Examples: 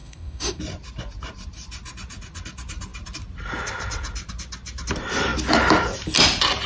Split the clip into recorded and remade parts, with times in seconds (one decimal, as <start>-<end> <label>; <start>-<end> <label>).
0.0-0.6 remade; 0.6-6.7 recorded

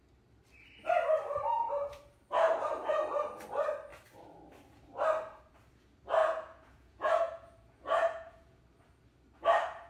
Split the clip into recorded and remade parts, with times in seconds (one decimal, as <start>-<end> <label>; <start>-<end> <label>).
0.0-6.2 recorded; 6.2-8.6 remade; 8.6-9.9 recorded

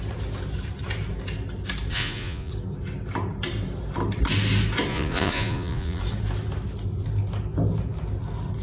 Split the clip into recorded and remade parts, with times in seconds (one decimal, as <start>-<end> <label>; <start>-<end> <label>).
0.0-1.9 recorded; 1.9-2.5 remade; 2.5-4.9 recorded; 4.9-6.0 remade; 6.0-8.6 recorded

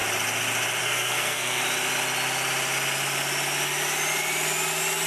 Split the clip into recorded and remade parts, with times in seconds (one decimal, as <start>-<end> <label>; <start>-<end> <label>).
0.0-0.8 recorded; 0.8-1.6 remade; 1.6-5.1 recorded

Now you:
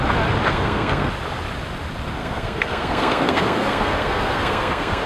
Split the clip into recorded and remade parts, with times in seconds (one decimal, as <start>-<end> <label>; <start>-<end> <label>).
0.0-0.5 recorded; 0.5-1.1 remade; 1.1-2.2 recorded; 2.2-5.1 remade

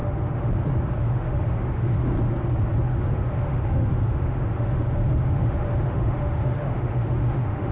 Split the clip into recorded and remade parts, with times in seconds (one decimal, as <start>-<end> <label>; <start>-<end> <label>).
0.0-0.5 remade; 0.5-1.0 recorded; 1.0-2.1 remade; 2.1-2.9 recorded; 2.9-7.7 remade